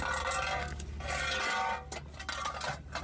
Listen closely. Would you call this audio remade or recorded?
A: recorded